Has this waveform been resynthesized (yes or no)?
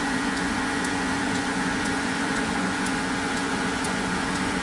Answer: yes